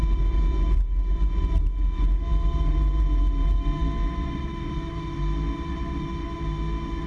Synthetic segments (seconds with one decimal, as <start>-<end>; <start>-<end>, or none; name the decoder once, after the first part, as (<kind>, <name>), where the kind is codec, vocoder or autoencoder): none